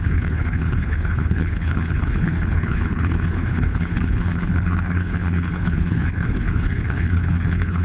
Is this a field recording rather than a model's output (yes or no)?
no